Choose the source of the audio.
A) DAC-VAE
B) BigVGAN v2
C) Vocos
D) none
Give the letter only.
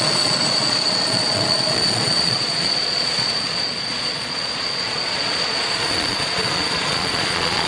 C